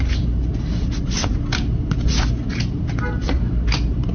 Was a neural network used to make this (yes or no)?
no